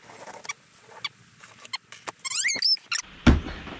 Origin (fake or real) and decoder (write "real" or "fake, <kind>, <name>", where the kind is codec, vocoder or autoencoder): real